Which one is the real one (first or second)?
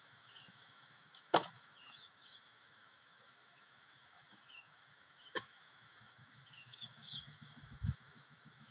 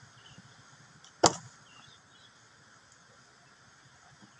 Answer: second